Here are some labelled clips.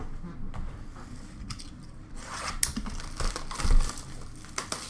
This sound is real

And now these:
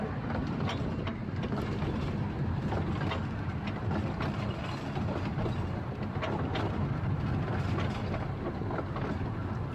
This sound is real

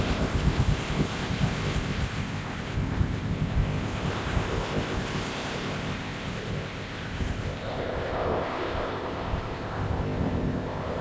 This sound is fake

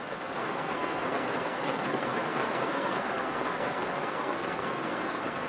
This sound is fake